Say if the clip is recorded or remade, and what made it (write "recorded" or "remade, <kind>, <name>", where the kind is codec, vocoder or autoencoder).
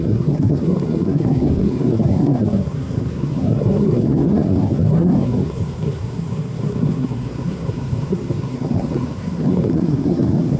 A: remade, codec, SNAC